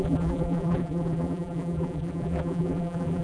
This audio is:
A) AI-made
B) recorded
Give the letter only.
A